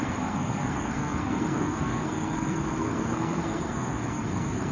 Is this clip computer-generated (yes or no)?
yes